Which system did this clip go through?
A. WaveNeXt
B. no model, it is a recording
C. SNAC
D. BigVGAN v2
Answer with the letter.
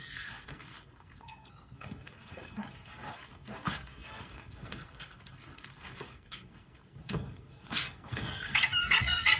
C